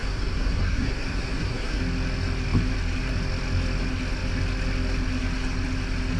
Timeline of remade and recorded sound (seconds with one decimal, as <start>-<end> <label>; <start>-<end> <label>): 0.0-1.8 remade; 1.8-6.2 recorded